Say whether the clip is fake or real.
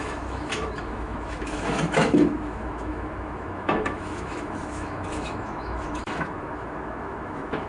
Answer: fake